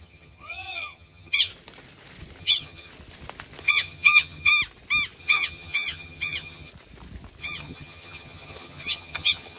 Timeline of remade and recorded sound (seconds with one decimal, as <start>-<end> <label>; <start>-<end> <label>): 0.0-1.5 remade; 1.5-2.4 recorded; 2.4-2.9 remade; 2.9-3.6 recorded; 3.6-4.5 remade; 4.5-5.2 recorded; 5.2-6.7 remade; 6.7-7.4 recorded; 7.4-9.6 remade